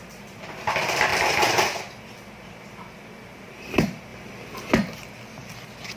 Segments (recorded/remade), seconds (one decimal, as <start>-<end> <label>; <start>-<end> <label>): 0.0-6.0 recorded